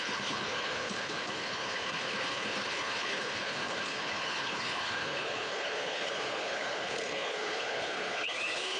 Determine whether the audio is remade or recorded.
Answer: remade